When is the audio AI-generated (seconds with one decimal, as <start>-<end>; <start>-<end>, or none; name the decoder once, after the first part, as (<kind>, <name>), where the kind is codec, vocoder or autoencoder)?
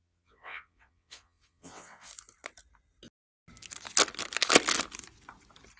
0.0-2.1 (vocoder, WaveNeXt)